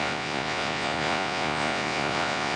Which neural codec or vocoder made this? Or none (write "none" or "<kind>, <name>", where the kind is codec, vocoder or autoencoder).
vocoder, Vocos